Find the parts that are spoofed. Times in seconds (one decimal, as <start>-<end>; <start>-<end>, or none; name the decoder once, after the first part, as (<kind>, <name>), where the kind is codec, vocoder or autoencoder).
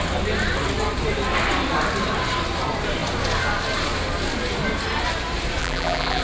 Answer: 5.6-6.2 (vocoder, BigVGAN v2)